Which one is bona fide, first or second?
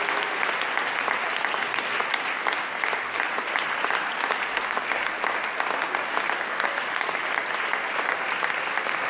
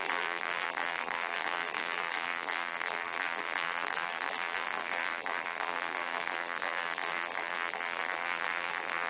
first